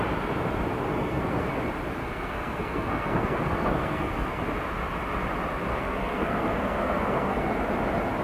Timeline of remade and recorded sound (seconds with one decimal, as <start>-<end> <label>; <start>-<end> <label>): 0.0-0.9 recorded; 0.9-1.5 remade; 1.5-2.0 recorded; 2.0-4.4 remade; 4.4-5.7 recorded; 5.7-7.5 remade; 7.5-8.2 recorded